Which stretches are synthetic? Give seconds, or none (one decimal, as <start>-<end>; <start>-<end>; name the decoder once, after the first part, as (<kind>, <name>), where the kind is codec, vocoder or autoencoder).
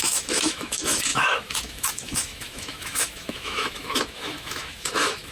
0.0-5.3 (autoencoder, DAC-VAE)